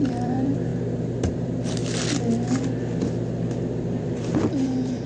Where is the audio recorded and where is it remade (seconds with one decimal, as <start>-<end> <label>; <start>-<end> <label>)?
0.0-0.7 remade; 0.7-1.3 recorded; 1.3-1.8 remade; 1.8-3.6 recorded; 3.6-5.1 remade